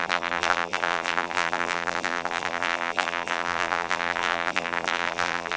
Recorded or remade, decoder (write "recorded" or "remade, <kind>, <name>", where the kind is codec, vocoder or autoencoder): remade, vocoder, BigVGAN v2